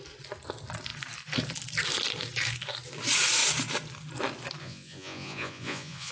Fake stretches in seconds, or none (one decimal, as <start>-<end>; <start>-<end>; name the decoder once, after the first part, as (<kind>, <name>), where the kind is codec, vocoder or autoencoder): 4.6-6.1 (vocoder, Vocos)